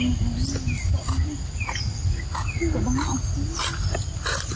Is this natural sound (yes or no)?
yes